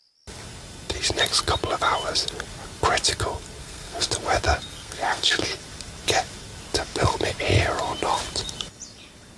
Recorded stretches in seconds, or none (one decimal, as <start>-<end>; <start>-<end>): 0.0-3.6; 4.1-4.7; 5.6-9.4